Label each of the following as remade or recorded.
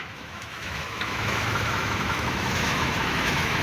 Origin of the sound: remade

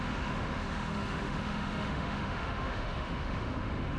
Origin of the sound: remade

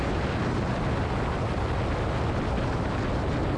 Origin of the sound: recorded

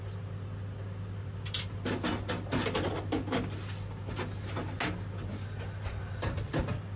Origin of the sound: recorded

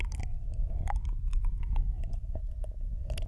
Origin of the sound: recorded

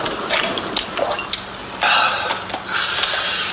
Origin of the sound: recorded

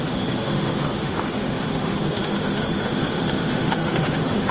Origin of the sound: remade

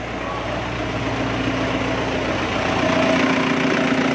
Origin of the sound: recorded